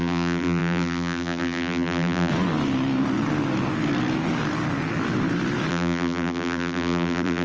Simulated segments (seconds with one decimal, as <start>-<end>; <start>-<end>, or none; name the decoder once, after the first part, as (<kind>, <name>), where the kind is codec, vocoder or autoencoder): 0.0-2.3 (vocoder, BigVGAN v2); 5.7-7.4

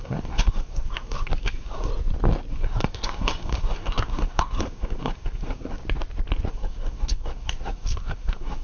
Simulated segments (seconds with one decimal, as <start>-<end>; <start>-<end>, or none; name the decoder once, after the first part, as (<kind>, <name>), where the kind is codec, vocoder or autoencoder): 0.0-1.9 (codec, SNAC); 2.5-5.8; 6.5-8.6

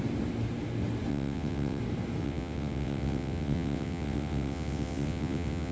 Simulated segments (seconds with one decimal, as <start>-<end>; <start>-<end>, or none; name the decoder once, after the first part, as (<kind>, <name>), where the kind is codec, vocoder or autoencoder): 1.1-1.8 (vocoder, WaveNeXt); 2.2-5.7

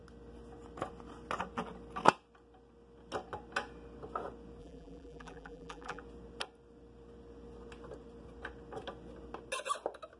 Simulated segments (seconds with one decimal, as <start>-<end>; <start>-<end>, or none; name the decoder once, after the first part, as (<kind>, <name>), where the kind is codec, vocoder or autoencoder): 4.6-6.0 (vocoder, BigVGAN v2)

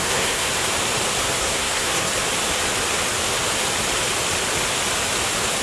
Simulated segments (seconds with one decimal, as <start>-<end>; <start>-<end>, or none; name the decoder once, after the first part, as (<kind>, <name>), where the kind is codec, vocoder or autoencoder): 0.0-0.5 (codec, SNAC); 1.4-2.1